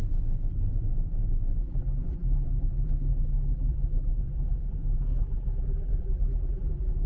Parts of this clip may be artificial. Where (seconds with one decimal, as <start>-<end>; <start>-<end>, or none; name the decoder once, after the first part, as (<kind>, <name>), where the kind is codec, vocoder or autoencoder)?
1.6-7.1 (vocoder, BigVGAN v2)